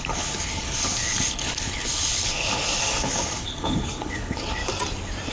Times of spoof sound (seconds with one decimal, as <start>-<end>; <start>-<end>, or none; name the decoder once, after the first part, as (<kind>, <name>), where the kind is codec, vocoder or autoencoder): 0.0-4.6 (codec, HILCodec)